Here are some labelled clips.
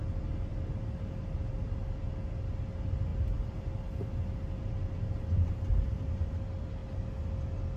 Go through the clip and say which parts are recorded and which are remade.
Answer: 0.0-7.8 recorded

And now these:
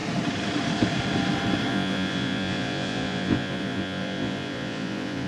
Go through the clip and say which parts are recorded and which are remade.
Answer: 0.0-1.7 recorded; 1.7-5.3 remade